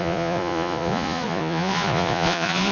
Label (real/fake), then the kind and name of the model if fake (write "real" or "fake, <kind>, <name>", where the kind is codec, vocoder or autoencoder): fake, vocoder, Vocos